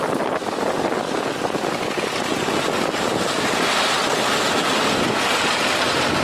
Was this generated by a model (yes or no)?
no